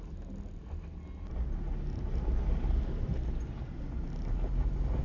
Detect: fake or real real